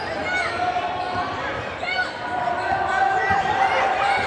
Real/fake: real